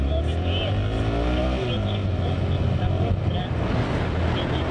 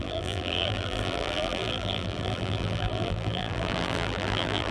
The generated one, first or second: second